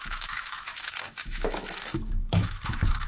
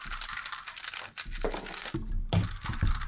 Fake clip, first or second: first